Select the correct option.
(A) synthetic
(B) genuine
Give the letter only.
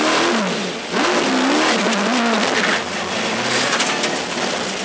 B